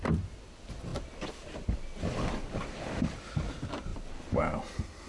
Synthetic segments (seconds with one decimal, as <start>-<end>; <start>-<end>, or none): none